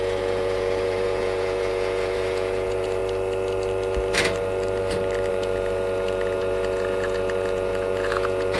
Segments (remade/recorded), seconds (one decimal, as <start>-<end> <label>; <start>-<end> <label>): 0.0-3.0 remade; 3.0-5.3 recorded; 5.3-8.6 remade